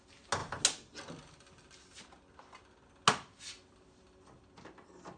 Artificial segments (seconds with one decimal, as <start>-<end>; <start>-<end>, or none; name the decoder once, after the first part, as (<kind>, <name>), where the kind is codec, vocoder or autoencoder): none

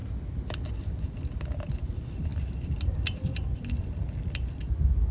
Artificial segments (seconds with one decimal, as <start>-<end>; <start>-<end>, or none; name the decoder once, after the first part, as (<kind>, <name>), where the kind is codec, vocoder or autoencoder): none

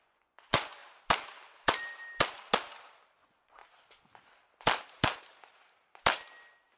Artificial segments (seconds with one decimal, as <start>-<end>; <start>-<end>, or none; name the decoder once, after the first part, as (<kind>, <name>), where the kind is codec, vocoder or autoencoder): 0.0-0.8 (vocoder, Vocos); 3.2-3.6

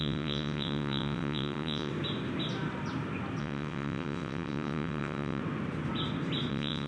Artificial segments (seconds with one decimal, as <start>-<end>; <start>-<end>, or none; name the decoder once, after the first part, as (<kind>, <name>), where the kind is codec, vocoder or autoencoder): 0.0-1.9 (vocoder, WaveNeXt); 3.4-5.4; 6.5-6.9